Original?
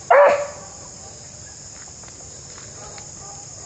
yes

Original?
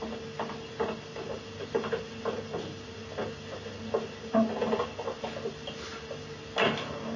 yes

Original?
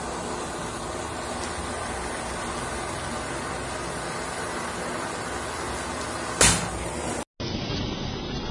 yes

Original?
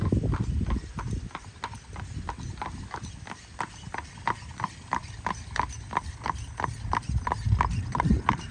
yes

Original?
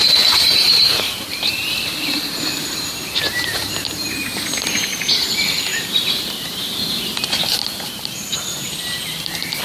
no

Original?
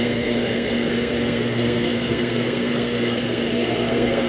no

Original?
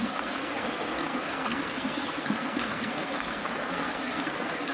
no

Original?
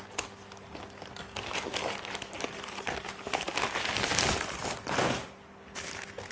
yes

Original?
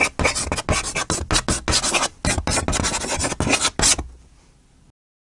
yes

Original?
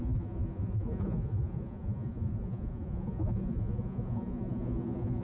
no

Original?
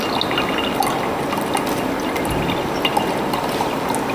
yes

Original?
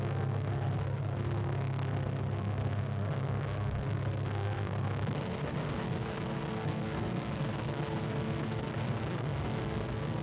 no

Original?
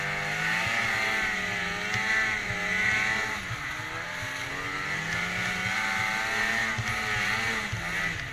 yes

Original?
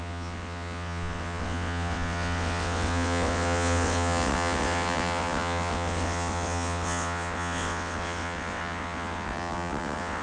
no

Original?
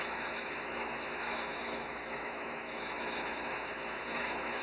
no